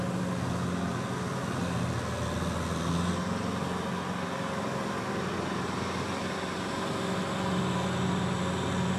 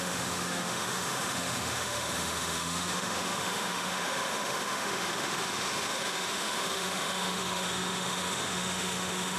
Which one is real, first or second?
first